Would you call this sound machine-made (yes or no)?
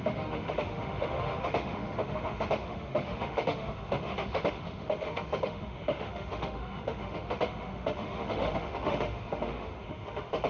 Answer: yes